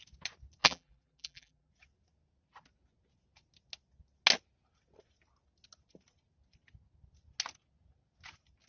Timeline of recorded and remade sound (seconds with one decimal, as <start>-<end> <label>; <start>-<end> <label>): 0.0-0.6 recorded; 0.6-1.7 remade; 1.7-8.7 recorded